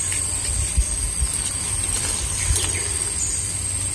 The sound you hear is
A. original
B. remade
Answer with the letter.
A